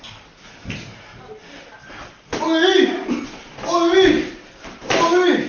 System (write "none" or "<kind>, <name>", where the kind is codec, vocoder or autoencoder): none